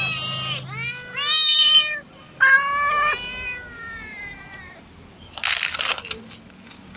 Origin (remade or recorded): recorded